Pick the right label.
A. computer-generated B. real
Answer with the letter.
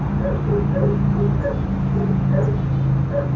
B